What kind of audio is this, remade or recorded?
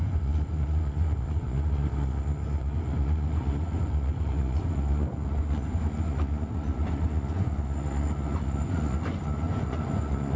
remade